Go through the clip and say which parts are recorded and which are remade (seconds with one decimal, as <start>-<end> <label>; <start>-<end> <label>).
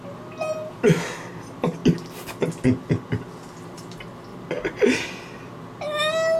0.0-4.3 recorded; 4.3-5.6 remade; 5.6-6.4 recorded